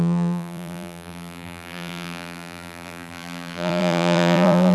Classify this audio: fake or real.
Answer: fake